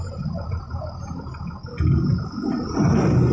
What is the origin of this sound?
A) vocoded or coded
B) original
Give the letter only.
B